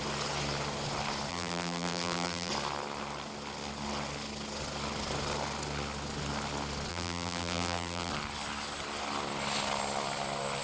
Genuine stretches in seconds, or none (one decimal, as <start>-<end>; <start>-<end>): 0.0-1.3; 2.5-6.9; 8.1-10.6

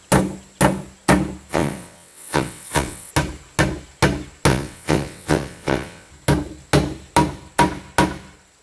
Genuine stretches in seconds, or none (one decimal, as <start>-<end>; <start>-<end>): 0.0-1.5; 3.1-4.5; 6.1-8.6